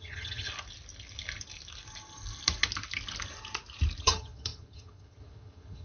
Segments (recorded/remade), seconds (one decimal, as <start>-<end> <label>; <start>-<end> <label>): 0.0-0.5 remade; 0.5-4.0 recorded; 4.0-5.8 remade